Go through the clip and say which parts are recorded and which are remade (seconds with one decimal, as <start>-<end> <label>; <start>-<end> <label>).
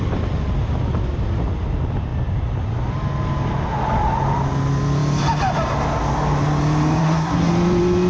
0.0-7.0 recorded; 7.0-7.5 remade; 7.5-8.1 recorded